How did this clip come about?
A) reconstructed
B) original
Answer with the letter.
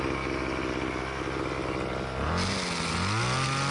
B